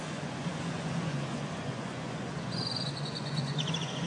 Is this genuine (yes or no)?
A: no